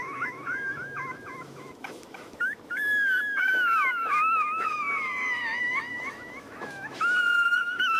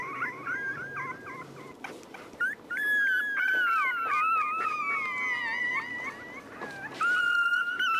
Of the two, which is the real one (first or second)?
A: second